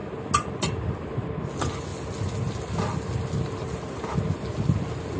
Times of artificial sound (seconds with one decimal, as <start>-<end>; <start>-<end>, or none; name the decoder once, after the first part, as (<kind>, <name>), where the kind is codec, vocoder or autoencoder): none